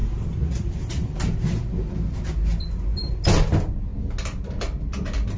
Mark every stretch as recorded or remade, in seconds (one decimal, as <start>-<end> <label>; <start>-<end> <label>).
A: 0.0-5.4 recorded